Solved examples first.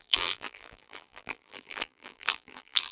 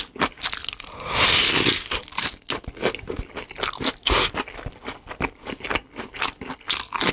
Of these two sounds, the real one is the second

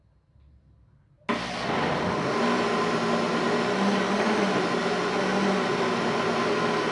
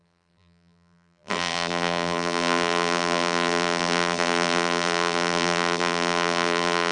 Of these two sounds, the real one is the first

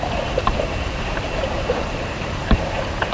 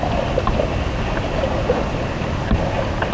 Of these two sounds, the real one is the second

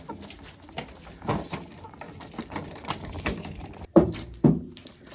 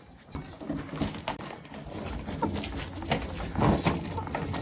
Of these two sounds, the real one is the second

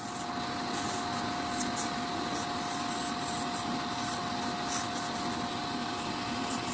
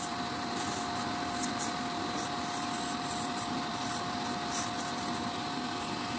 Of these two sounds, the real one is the first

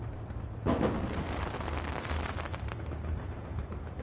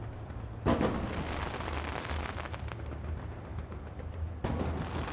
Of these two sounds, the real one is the second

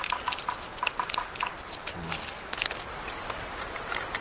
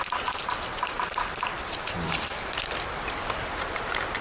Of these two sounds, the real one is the first